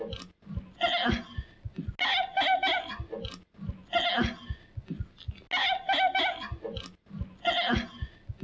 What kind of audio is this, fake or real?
real